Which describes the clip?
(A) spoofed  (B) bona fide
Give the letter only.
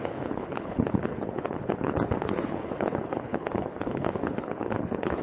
A